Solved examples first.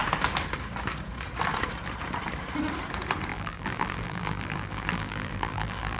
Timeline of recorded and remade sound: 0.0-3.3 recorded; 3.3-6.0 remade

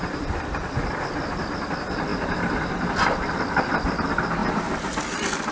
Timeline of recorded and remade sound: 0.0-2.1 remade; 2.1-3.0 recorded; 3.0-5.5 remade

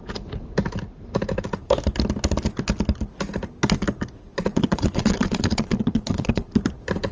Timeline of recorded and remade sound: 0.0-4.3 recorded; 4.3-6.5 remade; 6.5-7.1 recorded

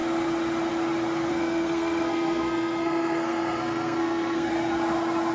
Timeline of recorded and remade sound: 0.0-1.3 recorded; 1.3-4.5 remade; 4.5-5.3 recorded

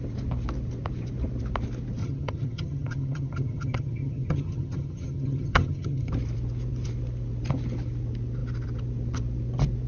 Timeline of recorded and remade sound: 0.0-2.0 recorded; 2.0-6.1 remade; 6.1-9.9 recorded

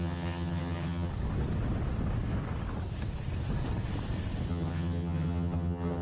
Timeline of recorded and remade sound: 0.0-1.1 remade; 1.1-4.5 recorded; 4.5-6.0 remade

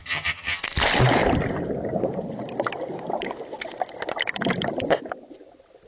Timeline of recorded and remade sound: 0.0-0.6 remade; 0.6-5.9 recorded

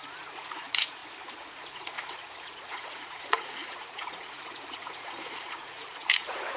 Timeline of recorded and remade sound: 0.0-1.0 remade; 1.0-1.5 recorded; 1.5-6.6 remade